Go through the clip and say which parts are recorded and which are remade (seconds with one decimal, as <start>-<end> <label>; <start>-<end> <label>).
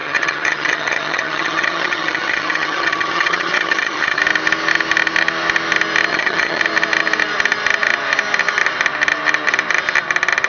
0.0-4.2 remade; 4.2-6.1 recorded; 6.1-6.6 remade; 6.6-10.5 recorded